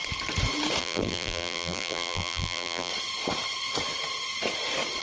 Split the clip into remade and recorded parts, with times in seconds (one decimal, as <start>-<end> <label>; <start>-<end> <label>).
0.0-0.8 recorded; 0.8-2.9 remade; 2.9-5.0 recorded